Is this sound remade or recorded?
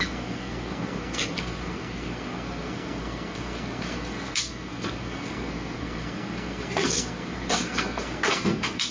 remade